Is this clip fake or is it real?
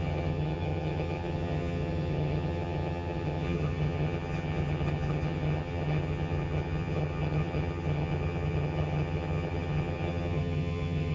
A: fake